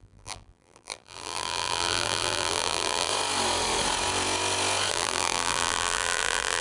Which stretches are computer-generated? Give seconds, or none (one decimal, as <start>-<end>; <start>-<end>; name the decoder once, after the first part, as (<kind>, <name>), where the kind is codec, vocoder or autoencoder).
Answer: 0.0-3.1 (vocoder, BigVGAN v2); 4.9-6.6